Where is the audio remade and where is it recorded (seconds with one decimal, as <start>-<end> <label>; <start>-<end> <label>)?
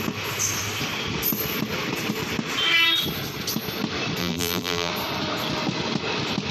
0.0-4.2 recorded; 4.2-4.9 remade; 4.9-6.5 recorded